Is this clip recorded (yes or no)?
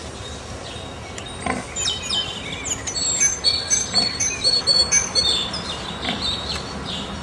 yes